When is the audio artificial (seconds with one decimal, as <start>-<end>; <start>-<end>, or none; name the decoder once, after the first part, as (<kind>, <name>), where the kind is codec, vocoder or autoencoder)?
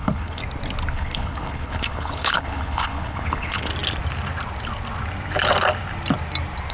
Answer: 0.0-0.4 (codec, HILCodec); 0.9-3.7